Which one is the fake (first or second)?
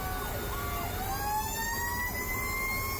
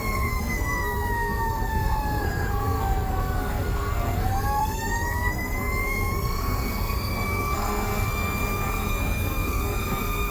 second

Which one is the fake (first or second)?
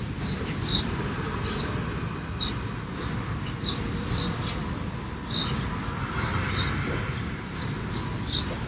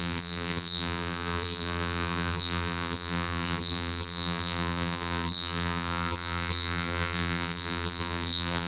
second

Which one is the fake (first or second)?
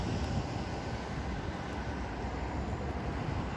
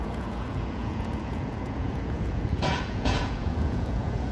second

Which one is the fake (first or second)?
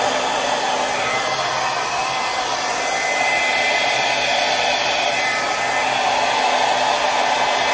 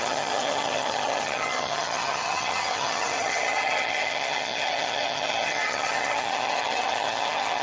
second